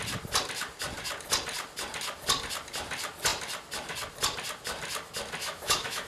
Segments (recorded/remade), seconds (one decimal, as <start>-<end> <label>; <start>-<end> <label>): 0.0-5.4 recorded; 5.4-6.1 remade